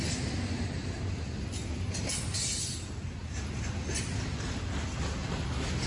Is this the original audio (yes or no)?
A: yes